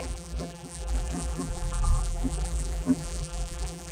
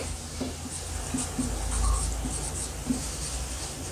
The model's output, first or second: first